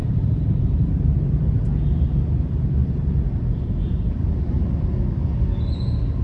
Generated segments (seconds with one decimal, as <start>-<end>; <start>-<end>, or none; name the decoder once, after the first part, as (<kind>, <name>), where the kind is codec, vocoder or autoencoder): 0.0-1.4 (vocoder, BigVGAN v2)